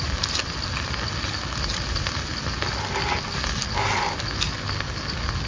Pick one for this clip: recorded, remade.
recorded